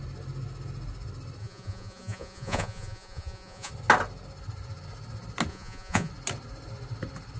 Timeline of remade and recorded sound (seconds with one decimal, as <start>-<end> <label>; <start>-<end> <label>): 0.0-1.4 recorded; 1.4-3.7 remade; 3.7-5.5 recorded; 5.5-6.1 remade; 6.1-7.4 recorded